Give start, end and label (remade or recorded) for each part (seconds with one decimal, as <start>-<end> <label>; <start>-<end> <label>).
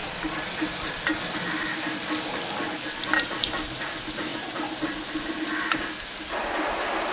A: 0.0-7.1 recorded